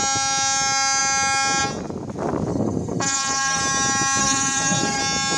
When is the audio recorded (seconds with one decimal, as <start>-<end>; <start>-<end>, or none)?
0.0-2.5; 3.6-4.2; 5.0-5.4